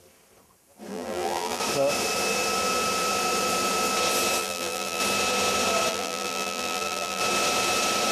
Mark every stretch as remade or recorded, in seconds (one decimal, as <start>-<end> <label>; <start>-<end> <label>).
0.0-0.9 recorded; 0.9-1.6 remade; 1.6-4.4 recorded; 4.4-5.0 remade; 5.0-5.9 recorded; 5.9-7.2 remade; 7.2-8.1 recorded